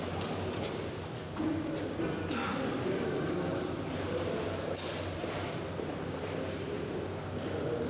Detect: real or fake real